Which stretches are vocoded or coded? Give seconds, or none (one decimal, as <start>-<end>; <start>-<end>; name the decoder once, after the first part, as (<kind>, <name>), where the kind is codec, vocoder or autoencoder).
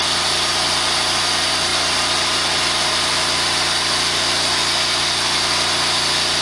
none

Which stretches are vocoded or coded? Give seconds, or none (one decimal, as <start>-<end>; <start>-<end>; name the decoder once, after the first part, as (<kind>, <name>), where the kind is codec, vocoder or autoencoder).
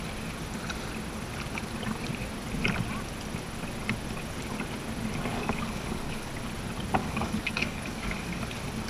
5.3-6.3 (codec, DAC); 7.0-8.4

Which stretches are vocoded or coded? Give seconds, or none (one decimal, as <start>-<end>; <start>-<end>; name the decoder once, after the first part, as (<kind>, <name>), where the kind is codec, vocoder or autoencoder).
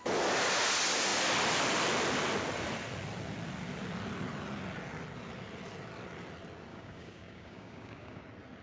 6.7-8.2 (codec, DAC)